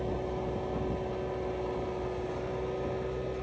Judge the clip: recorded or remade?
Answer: recorded